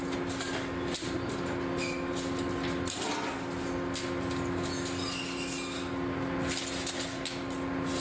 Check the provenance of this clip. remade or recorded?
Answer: recorded